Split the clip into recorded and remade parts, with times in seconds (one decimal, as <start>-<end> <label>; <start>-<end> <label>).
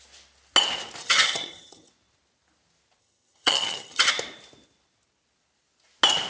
0.0-1.0 recorded; 1.0-1.9 remade; 1.9-3.0 recorded; 3.0-4.1 remade; 4.1-6.3 recorded